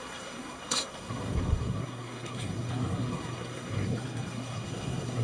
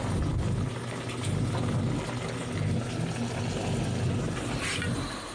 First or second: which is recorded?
second